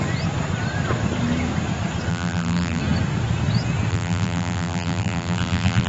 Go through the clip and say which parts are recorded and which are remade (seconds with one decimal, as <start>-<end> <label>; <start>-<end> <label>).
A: 0.0-2.1 recorded; 2.1-2.8 remade; 2.8-3.9 recorded; 3.9-5.9 remade